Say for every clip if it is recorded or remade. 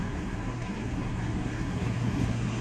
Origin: remade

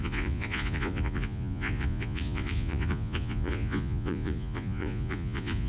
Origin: remade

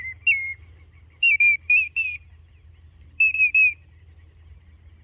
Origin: recorded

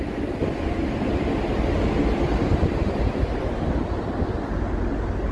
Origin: recorded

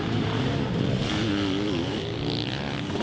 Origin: recorded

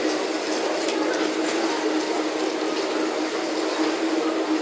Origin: recorded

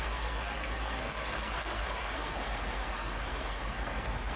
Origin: remade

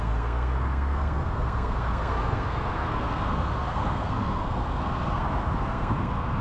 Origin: remade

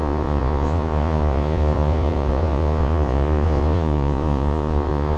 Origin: remade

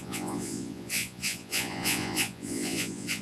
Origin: remade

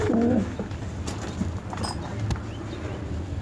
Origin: recorded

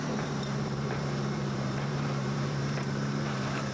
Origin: remade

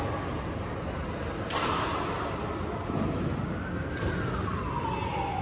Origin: recorded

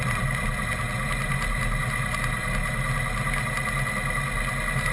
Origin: recorded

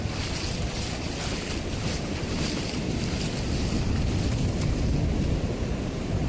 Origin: recorded